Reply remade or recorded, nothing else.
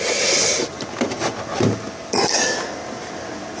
recorded